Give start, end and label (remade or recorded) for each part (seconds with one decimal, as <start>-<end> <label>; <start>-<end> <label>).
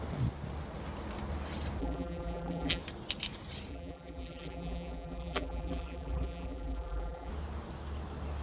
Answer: 0.0-1.8 recorded; 1.8-2.8 remade; 2.8-3.7 recorded; 3.7-7.3 remade; 7.3-8.4 recorded